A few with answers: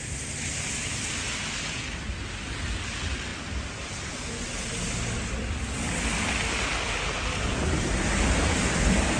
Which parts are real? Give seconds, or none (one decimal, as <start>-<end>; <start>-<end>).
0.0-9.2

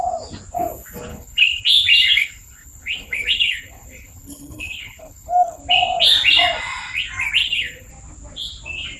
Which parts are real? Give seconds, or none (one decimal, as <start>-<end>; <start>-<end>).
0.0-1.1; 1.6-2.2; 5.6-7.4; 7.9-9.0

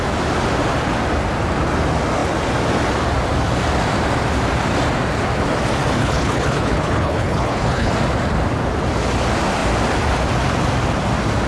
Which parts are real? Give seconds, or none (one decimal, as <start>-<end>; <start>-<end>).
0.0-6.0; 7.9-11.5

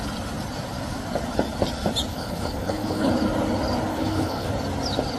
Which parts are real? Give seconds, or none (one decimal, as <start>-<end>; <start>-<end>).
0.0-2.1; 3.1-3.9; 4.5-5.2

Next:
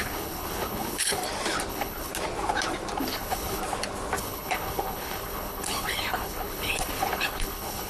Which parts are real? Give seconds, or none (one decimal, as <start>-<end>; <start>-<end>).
1.2-1.7; 2.1-3.0; 3.6-4.2

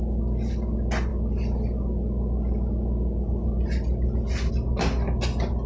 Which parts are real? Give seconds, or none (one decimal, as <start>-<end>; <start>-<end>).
0.0-5.7

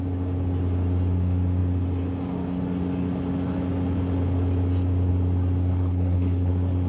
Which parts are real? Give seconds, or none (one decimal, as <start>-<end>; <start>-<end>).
0.0-5.7; 6.5-6.9

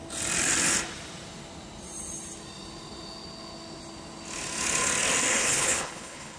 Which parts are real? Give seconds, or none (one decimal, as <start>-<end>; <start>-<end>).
0.0-5.3